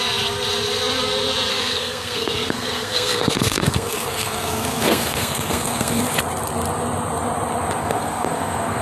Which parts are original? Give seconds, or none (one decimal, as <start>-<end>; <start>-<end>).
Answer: 0.0-1.5; 6.0-7.8